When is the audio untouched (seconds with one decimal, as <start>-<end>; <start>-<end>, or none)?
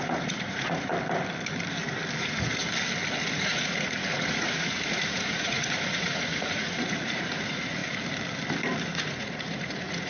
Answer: 0.9-2.2; 2.6-3.3; 7.8-8.8